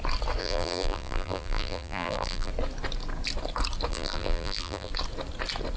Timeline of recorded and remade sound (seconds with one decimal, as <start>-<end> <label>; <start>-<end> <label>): 0.0-0.4 recorded; 0.4-2.5 remade; 2.5-3.9 recorded; 3.9-4.9 remade; 4.9-5.8 recorded